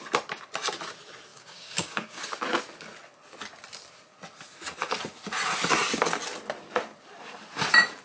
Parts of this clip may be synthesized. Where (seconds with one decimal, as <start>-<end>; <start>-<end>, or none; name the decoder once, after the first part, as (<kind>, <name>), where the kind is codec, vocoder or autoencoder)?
1.3-2.2 (codec, DAC)